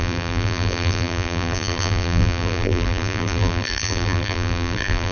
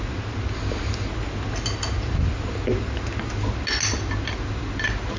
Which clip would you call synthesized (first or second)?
first